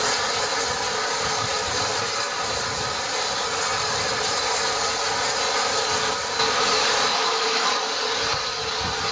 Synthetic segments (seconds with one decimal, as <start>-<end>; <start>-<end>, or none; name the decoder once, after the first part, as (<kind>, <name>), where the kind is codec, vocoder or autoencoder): 7.1-7.7 (autoencoder, DAC-VAE)